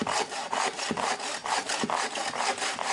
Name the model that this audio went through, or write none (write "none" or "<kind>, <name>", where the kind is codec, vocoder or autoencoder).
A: none